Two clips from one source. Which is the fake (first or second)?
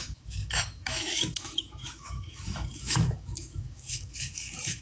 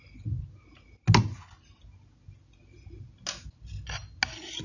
first